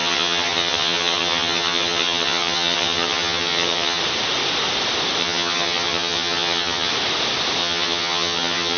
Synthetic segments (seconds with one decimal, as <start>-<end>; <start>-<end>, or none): 0.0-4.0; 5.2-6.9; 7.6-8.8